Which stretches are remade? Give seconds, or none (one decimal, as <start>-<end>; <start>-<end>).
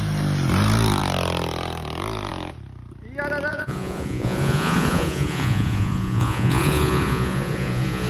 3.5-8.1